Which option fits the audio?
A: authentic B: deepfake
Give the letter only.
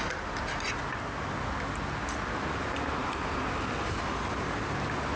A